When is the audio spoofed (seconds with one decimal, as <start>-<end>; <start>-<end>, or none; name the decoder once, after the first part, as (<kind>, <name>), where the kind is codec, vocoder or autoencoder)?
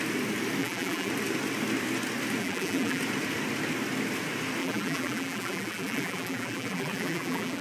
0.6-1.1 (vocoder, BigVGAN v2); 2.4-3.0; 4.6-7.6